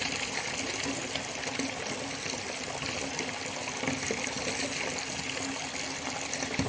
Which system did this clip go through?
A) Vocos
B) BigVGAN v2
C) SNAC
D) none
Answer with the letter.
D